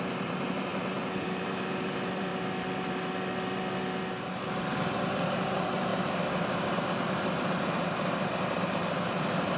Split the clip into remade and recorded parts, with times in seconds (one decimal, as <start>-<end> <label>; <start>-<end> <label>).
0.0-2.3 remade; 2.3-4.1 recorded; 4.1-9.6 remade